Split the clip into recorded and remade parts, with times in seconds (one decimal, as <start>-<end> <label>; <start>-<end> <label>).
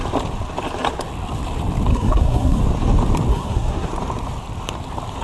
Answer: 0.0-1.9 recorded; 1.9-2.6 remade; 2.6-3.3 recorded; 3.3-3.9 remade; 3.9-5.2 recorded